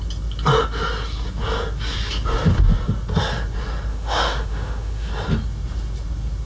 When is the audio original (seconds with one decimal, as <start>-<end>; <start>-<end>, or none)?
0.0-3.9; 5.1-6.5